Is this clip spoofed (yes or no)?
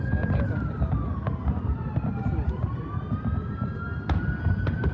no